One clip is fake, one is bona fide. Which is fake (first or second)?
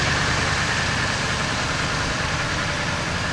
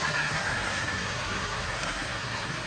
second